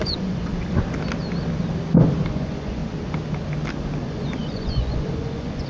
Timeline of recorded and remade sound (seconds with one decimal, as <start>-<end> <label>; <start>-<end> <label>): 0.0-0.5 remade; 0.5-2.3 recorded; 2.3-2.8 remade; 2.8-4.0 recorded; 4.0-5.7 remade

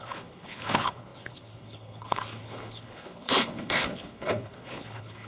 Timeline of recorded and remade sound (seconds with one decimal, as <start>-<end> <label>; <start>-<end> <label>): 0.0-5.3 remade

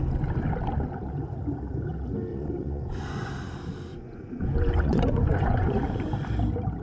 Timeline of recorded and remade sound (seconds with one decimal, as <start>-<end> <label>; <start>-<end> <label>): 0.0-2.3 recorded; 2.3-3.3 remade; 3.3-3.9 recorded; 3.9-5.8 remade; 5.8-6.8 recorded

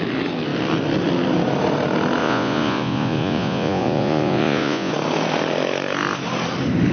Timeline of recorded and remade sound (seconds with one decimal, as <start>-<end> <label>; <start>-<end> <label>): 0.0-2.2 recorded; 2.2-4.9 remade; 4.9-6.9 recorded